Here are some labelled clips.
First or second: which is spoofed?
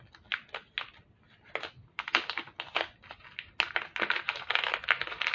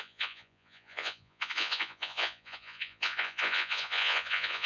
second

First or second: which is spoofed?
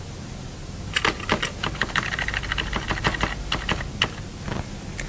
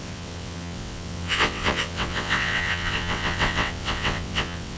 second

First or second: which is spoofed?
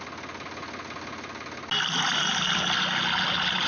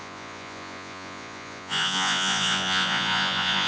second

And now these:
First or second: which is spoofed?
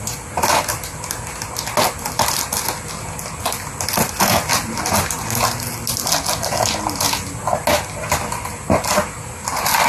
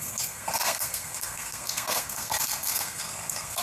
second